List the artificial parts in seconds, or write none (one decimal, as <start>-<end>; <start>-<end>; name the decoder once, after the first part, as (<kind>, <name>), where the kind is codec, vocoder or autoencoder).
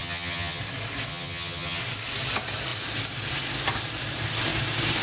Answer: 0.0-0.6 (vocoder, HiFi-GAN); 1.1-1.8